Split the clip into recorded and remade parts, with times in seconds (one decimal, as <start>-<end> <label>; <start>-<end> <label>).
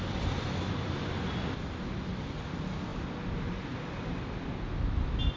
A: 0.0-5.4 recorded